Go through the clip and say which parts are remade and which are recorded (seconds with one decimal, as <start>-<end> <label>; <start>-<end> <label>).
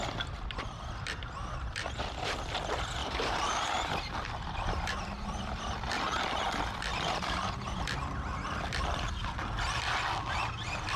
0.0-3.0 recorded; 3.0-3.9 remade; 3.9-6.9 recorded; 6.9-7.5 remade; 7.5-11.0 recorded